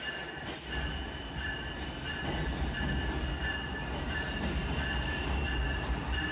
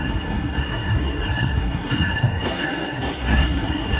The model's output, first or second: second